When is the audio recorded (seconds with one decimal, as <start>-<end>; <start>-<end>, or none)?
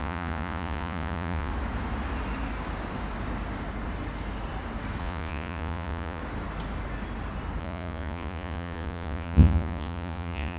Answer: 1.5-5.0; 6.2-7.6